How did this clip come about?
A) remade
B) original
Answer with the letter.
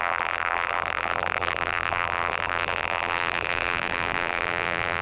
A